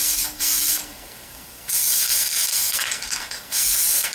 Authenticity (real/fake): fake